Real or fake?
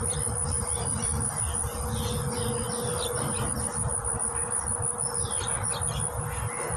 fake